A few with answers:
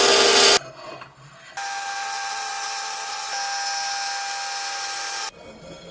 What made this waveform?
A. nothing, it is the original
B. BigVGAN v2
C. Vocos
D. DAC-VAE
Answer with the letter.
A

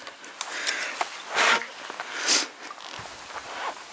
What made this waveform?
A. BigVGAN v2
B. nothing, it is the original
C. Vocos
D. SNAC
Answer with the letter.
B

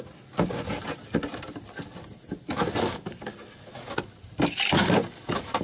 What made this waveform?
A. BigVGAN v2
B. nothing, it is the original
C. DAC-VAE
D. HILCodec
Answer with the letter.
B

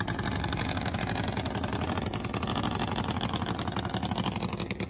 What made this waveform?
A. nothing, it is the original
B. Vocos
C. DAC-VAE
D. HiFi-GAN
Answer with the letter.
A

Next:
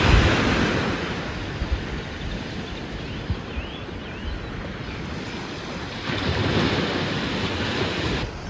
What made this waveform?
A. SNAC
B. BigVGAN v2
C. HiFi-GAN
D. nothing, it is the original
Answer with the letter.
D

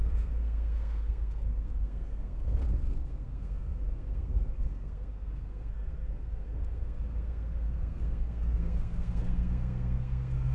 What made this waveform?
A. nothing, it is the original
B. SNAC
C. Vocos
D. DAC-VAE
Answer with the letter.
B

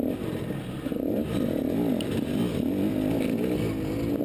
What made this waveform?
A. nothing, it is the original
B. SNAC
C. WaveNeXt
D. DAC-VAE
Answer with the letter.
A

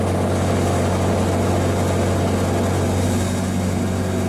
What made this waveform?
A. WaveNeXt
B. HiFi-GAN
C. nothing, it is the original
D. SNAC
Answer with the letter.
C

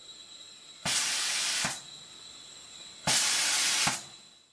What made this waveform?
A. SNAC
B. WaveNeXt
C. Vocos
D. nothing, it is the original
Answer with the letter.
D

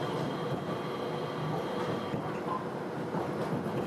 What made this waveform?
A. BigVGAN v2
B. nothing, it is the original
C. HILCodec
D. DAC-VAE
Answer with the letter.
B